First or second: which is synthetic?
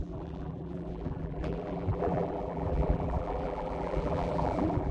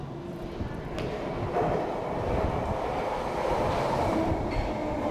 first